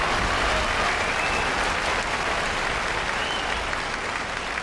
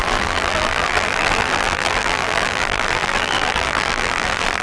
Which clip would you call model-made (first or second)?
second